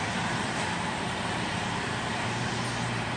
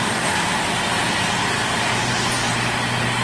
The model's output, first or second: first